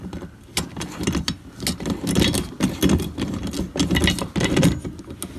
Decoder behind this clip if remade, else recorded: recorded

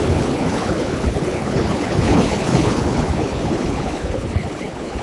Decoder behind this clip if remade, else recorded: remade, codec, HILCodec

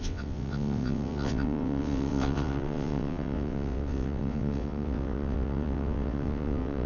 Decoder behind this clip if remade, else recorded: remade, vocoder, WaveNeXt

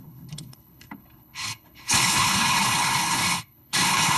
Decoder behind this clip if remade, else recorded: remade, codec, HILCodec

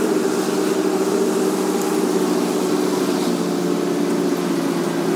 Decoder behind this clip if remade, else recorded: recorded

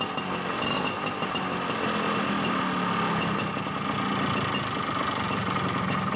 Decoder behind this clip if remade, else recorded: recorded